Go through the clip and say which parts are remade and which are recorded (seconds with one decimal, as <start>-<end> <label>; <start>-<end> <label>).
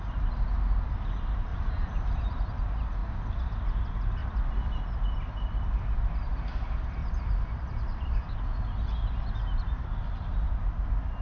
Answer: 0.0-1.5 recorded; 1.5-2.6 remade; 2.6-3.0 recorded; 3.0-3.5 remade; 3.5-4.2 recorded; 4.2-4.8 remade; 4.8-7.0 recorded; 7.0-8.4 remade; 8.4-11.2 recorded